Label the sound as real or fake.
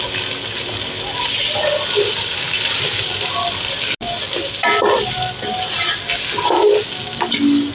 real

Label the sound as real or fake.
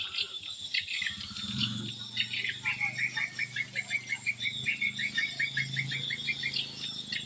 real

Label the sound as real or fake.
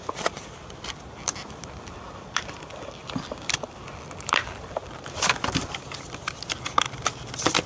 fake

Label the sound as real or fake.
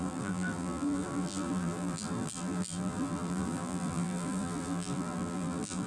fake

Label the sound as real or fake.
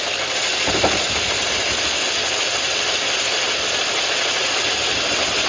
real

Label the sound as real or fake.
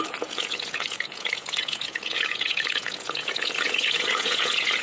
fake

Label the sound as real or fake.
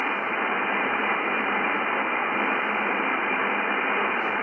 fake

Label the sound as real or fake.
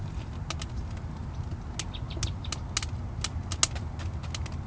real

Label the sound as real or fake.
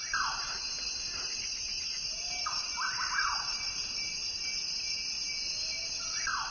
real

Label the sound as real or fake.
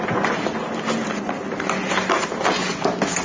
real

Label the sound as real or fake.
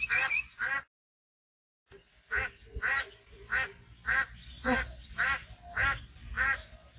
real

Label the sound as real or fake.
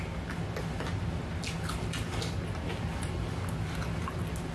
real